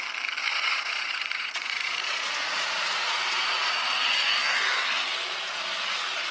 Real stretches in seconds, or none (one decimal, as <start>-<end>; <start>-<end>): 0.0-0.5; 4.3-6.3